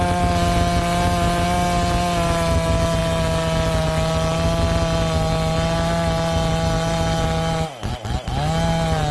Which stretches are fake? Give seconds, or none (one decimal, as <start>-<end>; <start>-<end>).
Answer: none